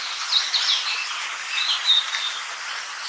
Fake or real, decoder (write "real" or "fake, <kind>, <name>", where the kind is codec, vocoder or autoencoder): real